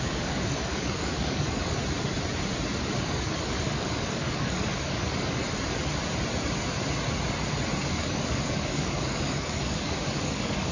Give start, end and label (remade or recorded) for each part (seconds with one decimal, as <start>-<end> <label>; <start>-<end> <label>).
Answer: 0.0-1.8 remade; 1.8-3.0 recorded; 3.0-5.4 remade; 5.4-7.8 recorded; 7.8-10.7 remade